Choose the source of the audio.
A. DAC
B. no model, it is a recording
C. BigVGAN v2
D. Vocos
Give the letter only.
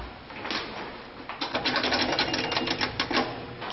B